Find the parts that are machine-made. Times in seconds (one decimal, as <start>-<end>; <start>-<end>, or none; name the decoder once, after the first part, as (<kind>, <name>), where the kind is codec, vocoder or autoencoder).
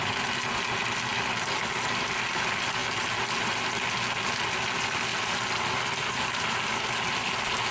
none